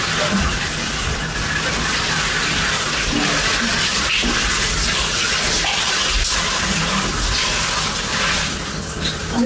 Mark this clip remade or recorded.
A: recorded